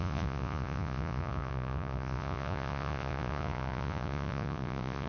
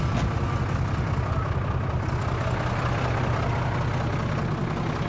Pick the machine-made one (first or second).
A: first